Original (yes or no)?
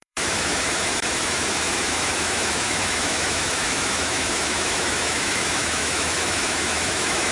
no